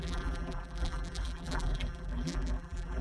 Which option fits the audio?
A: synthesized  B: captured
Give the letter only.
A